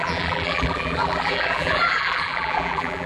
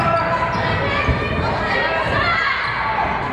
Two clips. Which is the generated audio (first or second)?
first